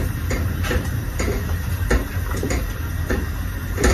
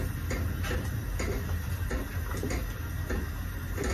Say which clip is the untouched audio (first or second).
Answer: second